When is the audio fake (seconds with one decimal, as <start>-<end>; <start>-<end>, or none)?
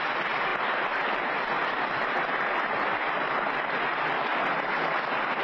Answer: none